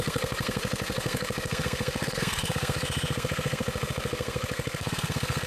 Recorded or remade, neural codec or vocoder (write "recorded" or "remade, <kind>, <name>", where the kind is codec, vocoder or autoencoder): remade, codec, SNAC